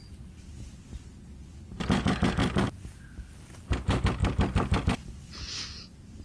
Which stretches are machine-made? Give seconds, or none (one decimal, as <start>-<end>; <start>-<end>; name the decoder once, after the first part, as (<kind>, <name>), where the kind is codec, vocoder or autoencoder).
none